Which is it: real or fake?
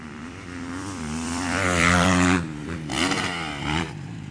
fake